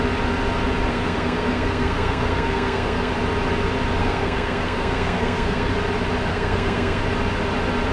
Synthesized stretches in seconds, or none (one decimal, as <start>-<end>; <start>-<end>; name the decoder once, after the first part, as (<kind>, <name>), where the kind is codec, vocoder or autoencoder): 0.9-3.1 (codec, SNAC); 4.0-5.7; 6.3-7.0

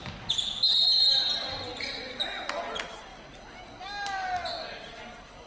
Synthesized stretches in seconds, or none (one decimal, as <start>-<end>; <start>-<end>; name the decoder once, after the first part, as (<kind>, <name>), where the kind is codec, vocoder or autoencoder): none